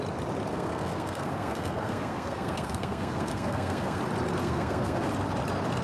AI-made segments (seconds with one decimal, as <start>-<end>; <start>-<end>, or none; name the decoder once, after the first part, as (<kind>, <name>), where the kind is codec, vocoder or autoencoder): 0.5-4.0 (codec, SNAC); 4.4-5.1